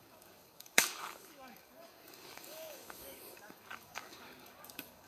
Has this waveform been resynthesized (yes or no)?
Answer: yes